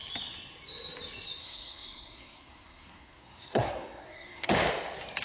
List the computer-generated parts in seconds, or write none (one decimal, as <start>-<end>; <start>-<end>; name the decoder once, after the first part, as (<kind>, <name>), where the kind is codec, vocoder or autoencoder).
1.4-4.5 (codec, SNAC)